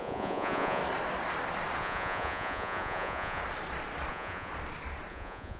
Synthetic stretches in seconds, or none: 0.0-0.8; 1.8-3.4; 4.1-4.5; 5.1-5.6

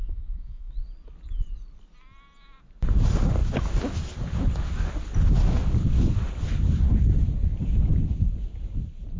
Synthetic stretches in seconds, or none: 0.0-0.7

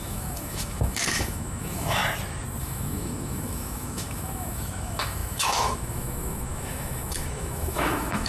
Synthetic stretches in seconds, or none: 0.0-2.0; 2.6-8.3

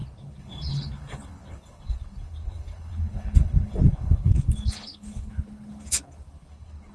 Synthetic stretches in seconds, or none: 0.0-6.9